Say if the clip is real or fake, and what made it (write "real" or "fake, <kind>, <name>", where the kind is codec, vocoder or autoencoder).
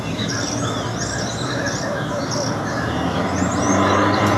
real